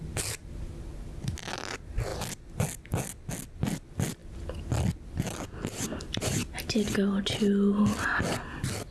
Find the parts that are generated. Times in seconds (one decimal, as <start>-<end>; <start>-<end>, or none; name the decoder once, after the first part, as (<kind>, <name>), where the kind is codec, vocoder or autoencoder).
none